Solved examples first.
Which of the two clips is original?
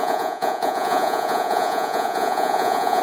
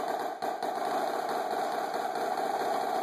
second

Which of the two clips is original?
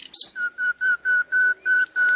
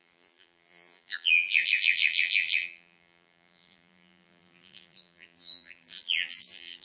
first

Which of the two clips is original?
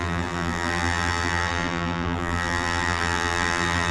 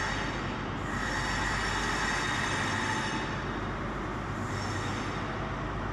second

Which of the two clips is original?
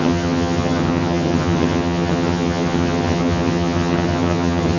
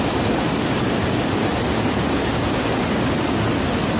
second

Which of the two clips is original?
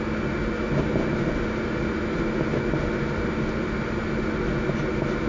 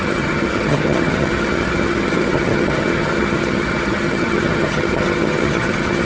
first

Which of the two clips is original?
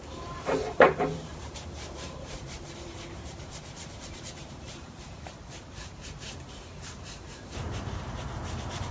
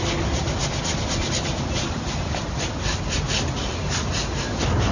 second